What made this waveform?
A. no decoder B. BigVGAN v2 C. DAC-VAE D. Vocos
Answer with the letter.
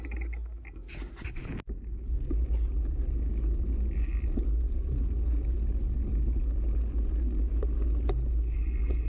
A